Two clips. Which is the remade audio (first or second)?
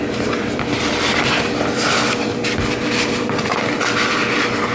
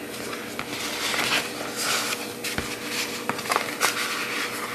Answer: first